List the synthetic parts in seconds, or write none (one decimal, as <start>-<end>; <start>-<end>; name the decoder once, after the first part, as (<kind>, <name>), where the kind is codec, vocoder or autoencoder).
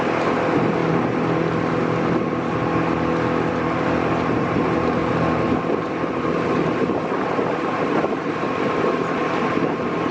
0.0-0.8 (vocoder, BigVGAN v2); 2.1-2.6; 3.5-10.1